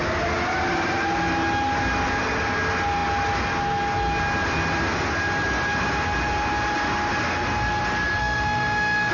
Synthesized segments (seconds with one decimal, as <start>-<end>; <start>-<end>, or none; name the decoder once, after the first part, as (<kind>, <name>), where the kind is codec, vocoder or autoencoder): 8.2-9.1 (autoencoder, DAC-VAE)